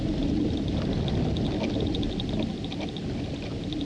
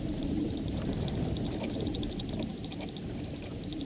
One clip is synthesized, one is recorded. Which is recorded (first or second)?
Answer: first